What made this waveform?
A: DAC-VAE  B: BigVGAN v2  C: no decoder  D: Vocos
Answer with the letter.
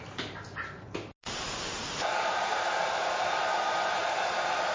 B